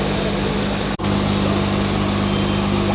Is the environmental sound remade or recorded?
recorded